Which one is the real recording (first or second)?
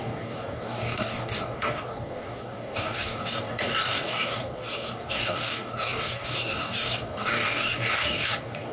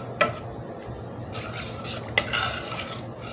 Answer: second